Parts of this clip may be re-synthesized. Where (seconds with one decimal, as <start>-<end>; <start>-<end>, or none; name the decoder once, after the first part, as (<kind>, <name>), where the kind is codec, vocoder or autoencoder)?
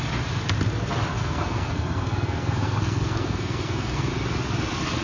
1.1-4.1 (codec, SNAC)